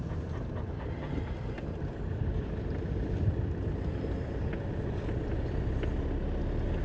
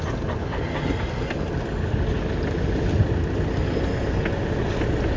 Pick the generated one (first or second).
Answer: first